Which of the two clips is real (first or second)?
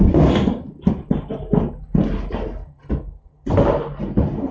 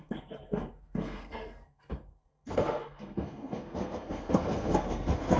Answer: first